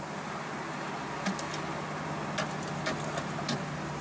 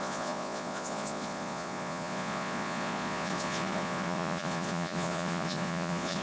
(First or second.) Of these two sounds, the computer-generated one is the second